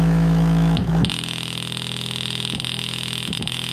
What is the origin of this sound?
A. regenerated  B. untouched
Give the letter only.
A